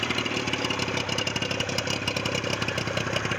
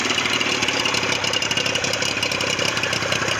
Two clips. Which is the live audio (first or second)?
first